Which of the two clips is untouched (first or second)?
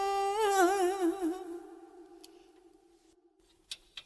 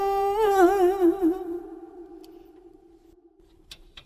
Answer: first